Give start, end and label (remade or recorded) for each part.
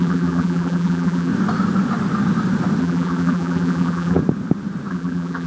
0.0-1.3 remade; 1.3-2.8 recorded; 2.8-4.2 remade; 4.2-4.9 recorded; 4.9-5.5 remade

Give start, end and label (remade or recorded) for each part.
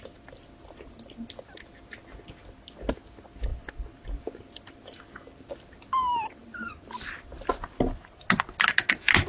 0.0-9.3 recorded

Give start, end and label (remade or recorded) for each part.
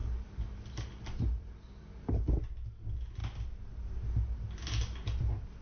0.0-5.6 recorded